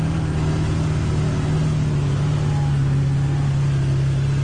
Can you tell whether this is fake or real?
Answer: real